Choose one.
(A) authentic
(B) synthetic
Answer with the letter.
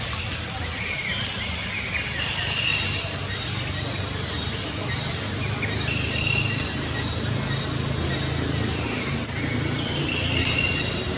A